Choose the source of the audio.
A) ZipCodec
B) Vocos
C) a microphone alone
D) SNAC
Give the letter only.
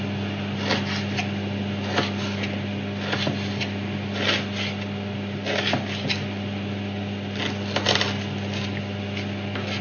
C